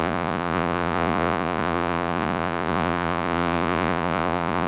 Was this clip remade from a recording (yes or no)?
yes